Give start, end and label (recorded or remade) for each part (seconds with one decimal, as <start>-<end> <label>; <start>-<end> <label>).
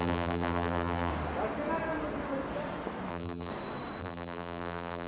0.0-1.1 remade; 1.1-3.1 recorded; 3.1-3.5 remade; 3.5-4.0 recorded; 4.0-5.1 remade